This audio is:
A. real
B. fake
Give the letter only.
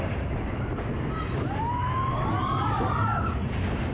A